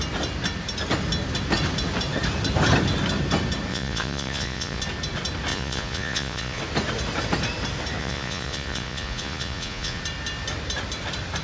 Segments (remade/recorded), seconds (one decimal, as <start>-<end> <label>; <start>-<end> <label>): 0.0-3.7 recorded; 3.7-4.8 remade; 4.8-5.5 recorded; 5.5-6.6 remade; 6.6-8.0 recorded; 8.0-10.0 remade; 10.0-11.4 recorded